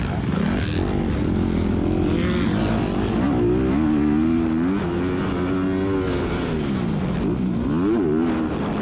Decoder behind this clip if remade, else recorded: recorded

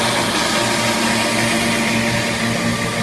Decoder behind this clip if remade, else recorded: recorded